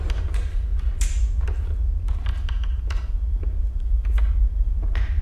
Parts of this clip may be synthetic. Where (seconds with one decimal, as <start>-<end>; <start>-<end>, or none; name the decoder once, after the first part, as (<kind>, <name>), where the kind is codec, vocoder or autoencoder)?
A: none